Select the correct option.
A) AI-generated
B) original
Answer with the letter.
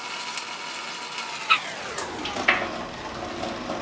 B